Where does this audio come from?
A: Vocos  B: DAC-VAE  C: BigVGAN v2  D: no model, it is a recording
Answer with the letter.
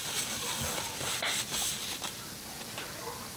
D